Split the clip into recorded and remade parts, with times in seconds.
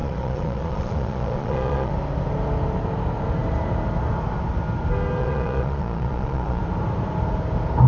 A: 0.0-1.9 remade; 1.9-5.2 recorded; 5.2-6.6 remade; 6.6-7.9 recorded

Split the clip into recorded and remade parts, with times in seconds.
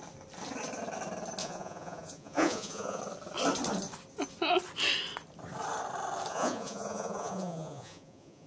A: 0.0-1.4 recorded; 1.4-3.0 remade; 3.0-6.3 recorded; 6.3-8.5 remade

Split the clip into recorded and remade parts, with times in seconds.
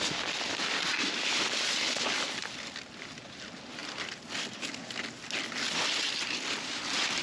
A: 0.0-7.2 recorded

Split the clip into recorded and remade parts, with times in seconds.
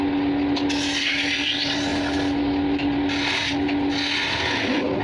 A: 0.0-5.0 recorded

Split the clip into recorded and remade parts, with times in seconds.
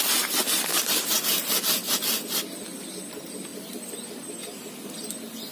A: 0.0-5.5 recorded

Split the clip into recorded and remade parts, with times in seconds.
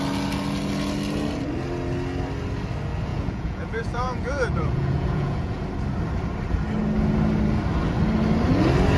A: 0.0-3.1 recorded; 3.1-5.6 remade; 5.6-9.0 recorded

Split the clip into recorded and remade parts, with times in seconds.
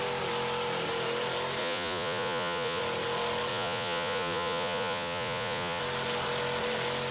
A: 0.0-1.6 recorded; 1.6-2.8 remade; 2.8-3.5 recorded; 3.5-5.8 remade; 5.8-7.1 recorded